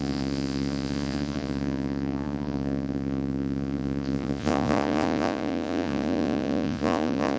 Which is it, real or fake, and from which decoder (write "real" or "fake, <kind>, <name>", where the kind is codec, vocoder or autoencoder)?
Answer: fake, vocoder, Vocos